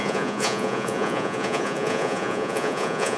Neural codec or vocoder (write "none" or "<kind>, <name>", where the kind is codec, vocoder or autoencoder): vocoder, Vocos